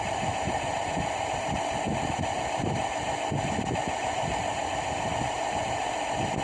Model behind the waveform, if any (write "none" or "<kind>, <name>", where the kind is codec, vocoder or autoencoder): none